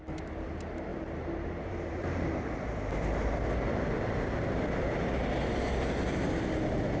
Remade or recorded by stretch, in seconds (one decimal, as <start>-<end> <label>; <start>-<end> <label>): 0.0-0.9 recorded; 0.9-2.5 remade; 2.5-7.0 recorded